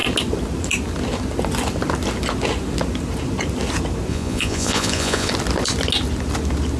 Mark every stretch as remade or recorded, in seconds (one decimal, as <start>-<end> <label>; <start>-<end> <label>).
0.0-4.1 recorded; 4.1-5.3 remade; 5.3-6.8 recorded